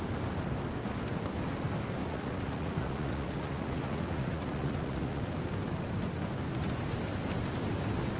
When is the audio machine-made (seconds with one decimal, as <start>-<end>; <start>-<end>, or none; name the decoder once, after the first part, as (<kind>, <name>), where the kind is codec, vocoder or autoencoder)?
2.0-5.2 (vocoder, Vocos)